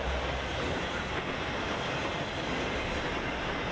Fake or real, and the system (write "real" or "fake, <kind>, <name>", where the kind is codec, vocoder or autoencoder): real